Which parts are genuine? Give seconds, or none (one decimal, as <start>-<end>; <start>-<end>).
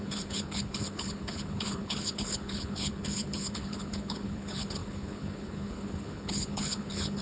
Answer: none